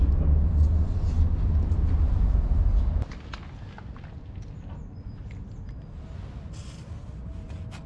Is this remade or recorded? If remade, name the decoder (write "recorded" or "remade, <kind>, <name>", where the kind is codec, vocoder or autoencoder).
recorded